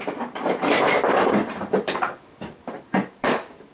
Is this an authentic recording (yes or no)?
no